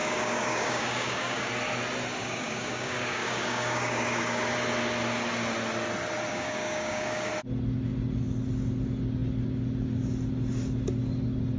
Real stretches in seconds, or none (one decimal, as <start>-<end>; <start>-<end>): 1.5-2.2; 4.4-6.3; 7.3-11.6